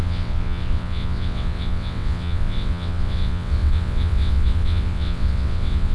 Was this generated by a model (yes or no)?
yes